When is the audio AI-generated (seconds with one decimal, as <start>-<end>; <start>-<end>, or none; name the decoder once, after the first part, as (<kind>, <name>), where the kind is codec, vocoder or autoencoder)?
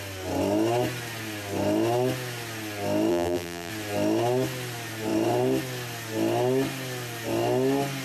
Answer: 3.1-3.7 (vocoder, BigVGAN v2)